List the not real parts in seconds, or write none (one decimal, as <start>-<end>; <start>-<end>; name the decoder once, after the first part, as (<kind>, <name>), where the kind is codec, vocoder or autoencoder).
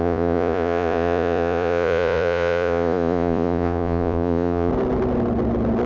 0.0-4.7 (vocoder, Vocos)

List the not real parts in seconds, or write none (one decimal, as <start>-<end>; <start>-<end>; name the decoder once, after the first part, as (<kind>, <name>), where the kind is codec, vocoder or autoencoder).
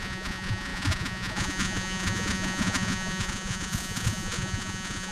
0.0-5.1 (vocoder, Vocos)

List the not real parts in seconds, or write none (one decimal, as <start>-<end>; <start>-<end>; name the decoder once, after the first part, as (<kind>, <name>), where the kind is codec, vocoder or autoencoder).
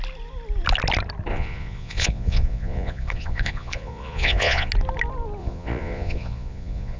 1.3-4.7 (vocoder, Vocos); 5.4-7.0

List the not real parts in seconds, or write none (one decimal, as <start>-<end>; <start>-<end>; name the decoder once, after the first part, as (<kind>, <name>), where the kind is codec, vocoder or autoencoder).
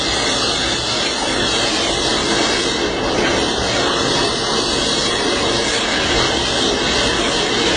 none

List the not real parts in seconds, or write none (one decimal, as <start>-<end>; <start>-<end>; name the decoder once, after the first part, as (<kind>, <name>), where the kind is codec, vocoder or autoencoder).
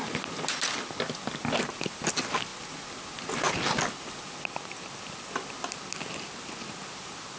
none